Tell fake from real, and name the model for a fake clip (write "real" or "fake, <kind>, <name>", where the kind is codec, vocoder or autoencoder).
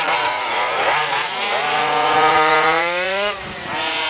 fake, vocoder, Vocos